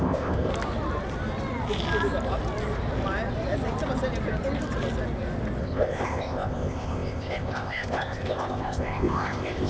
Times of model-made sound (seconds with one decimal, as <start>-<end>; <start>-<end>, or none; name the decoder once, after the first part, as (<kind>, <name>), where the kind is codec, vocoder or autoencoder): 0.0-0.5 (codec, ZipCodec); 5.6-9.7